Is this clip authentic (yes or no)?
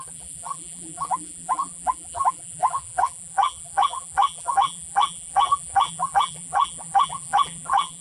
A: no